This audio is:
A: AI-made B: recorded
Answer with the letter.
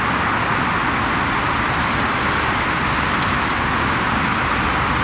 B